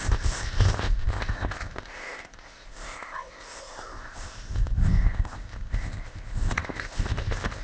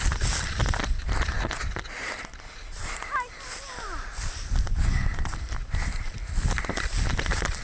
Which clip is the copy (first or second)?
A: first